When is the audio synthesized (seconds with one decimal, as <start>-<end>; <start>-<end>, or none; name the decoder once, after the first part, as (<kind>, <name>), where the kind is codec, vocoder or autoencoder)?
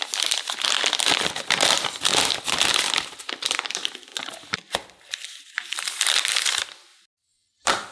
0.0-2.1 (vocoder, BigVGAN v2); 3.2-4.1; 5.5-7.9